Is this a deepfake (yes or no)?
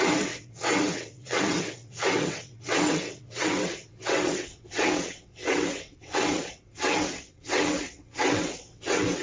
yes